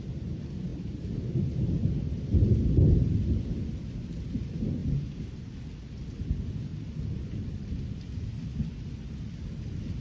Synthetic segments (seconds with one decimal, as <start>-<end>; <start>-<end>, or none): none